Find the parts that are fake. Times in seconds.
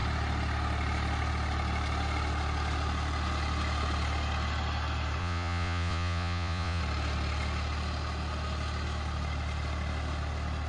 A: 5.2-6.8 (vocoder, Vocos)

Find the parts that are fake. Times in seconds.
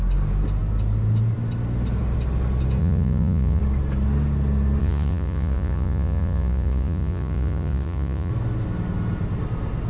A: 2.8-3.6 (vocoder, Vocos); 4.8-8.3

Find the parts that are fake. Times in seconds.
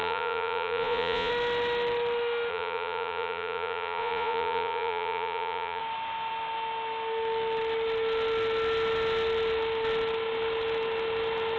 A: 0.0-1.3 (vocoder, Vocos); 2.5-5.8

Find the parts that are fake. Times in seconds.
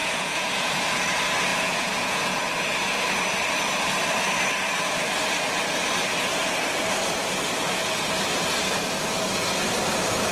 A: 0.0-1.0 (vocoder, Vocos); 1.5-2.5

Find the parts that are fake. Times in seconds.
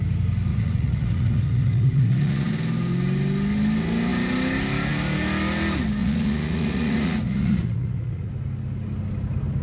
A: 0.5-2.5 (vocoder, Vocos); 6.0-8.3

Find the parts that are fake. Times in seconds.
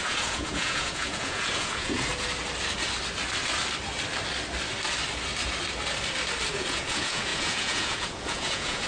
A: 0.0-2.1 (vocoder, Vocos); 6.5-8.9